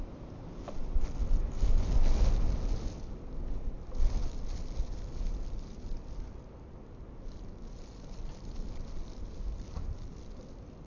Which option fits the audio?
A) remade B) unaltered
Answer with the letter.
B